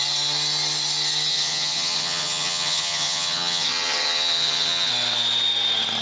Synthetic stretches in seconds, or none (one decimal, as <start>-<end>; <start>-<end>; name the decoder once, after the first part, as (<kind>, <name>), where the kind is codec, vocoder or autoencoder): 1.3-4.9 (vocoder, HiFi-GAN)